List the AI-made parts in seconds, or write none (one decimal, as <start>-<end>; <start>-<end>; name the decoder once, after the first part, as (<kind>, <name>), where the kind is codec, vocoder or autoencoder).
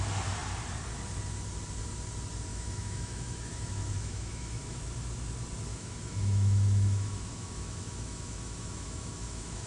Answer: 2.5-4.8 (autoencoder, DAC-VAE); 5.7-9.7